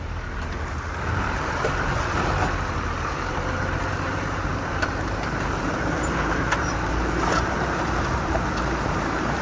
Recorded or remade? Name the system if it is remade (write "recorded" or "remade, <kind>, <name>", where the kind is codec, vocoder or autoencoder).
remade, vocoder, BigVGAN v2